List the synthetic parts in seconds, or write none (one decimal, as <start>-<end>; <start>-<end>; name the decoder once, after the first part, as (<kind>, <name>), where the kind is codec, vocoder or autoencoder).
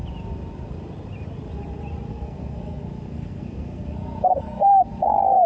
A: 2.1-5.5 (codec, SNAC)